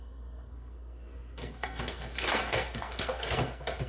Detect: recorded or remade remade